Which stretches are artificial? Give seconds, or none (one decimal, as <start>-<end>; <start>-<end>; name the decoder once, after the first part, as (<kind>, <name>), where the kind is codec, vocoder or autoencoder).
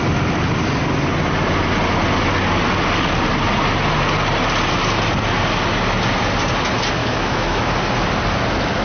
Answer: 7.0-7.7 (autoencoder, DAC-VAE)